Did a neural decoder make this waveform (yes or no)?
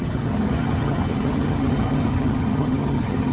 yes